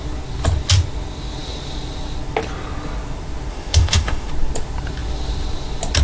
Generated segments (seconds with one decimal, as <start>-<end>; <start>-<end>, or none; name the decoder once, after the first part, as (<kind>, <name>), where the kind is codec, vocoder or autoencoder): 3.5-4.3 (autoencoder, DAC-VAE)